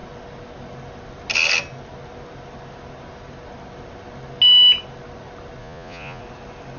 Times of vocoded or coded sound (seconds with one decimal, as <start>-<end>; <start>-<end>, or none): 5.6-6.2